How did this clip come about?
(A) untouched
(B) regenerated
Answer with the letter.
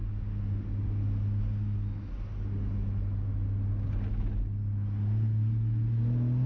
A